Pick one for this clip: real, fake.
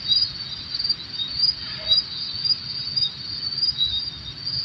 real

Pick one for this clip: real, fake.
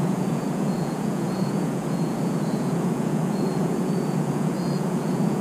fake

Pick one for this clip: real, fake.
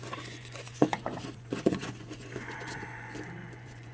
fake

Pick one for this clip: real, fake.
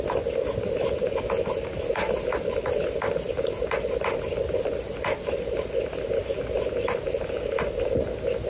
real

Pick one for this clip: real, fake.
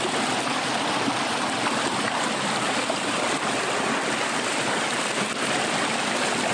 real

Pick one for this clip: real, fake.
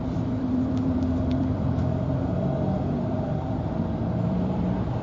fake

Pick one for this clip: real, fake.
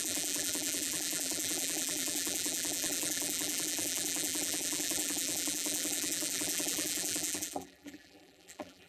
fake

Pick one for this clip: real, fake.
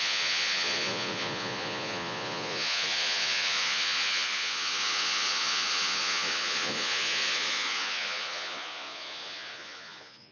fake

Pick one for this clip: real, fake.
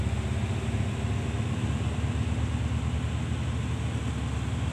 real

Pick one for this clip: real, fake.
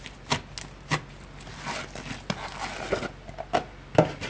real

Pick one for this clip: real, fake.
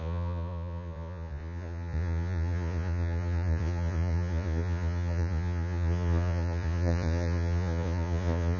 fake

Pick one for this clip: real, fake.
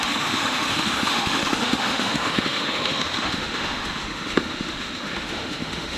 fake